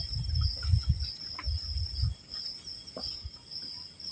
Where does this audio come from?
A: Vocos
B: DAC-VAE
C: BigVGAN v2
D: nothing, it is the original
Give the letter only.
D